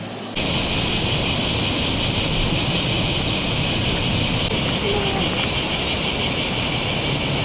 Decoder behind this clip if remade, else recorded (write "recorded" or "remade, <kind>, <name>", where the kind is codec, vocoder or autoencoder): recorded